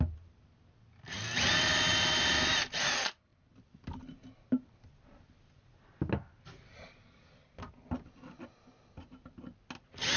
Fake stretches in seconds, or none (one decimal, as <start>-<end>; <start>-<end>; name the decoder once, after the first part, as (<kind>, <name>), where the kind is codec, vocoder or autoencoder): none

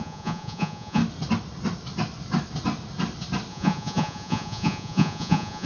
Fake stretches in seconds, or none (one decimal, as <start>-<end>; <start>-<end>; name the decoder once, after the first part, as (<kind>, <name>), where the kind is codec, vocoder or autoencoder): 0.0-1.0 (vocoder, Vocos); 3.5-5.7